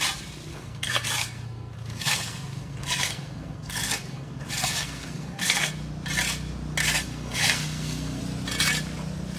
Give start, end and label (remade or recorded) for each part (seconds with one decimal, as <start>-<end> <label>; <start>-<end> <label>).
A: 0.0-0.5 recorded; 0.5-5.7 remade; 5.7-6.8 recorded; 6.8-8.2 remade; 8.2-9.4 recorded